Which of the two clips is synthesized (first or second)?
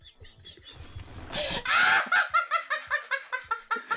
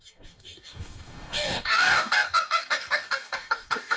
second